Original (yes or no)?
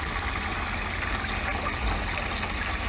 yes